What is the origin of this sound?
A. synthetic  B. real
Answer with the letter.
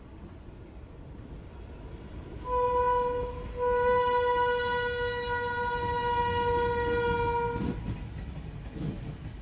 B